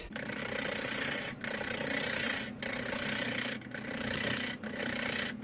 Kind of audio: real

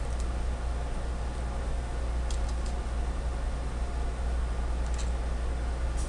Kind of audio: real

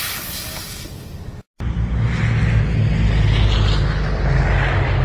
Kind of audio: real